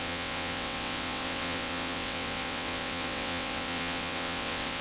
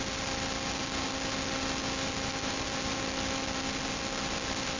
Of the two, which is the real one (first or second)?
second